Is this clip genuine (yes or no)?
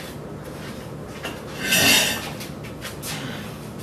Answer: yes